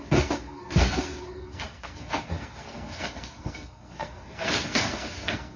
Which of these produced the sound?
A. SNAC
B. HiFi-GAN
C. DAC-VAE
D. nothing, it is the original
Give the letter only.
A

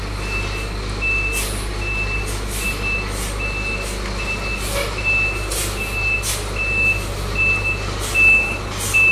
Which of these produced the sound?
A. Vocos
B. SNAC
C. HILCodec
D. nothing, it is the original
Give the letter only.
D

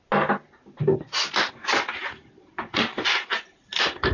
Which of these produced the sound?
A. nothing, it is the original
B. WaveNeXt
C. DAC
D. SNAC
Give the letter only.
A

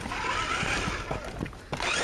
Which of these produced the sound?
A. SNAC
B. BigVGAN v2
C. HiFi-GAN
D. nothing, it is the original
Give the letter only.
D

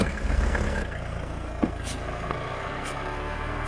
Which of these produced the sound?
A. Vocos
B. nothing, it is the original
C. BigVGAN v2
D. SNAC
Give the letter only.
D